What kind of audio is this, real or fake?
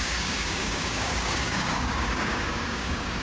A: fake